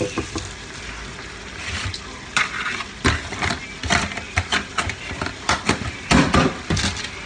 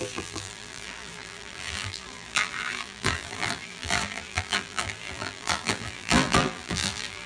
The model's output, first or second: second